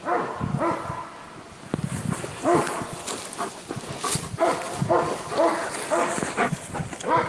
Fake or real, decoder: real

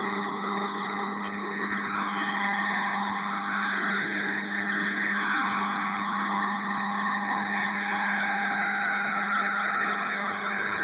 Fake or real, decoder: fake, codec, HILCodec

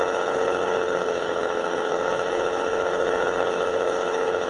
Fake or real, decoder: fake, codec, HILCodec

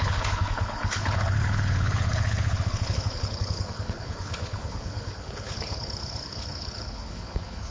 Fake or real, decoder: fake, codec, HILCodec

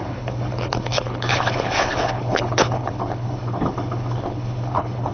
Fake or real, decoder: fake, codec, HILCodec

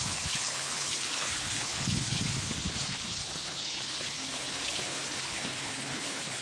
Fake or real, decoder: fake, codec, HILCodec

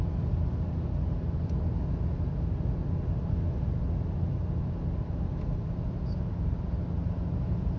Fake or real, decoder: real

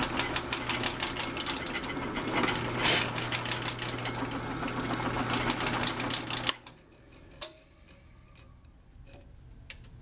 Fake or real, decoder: real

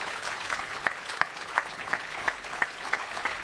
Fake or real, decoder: fake, codec, HILCodec